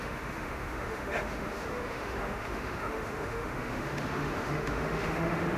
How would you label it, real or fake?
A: fake